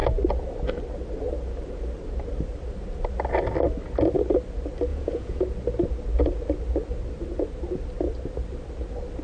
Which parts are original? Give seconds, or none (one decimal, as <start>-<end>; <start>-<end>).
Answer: 0.0-4.9; 5.4-9.2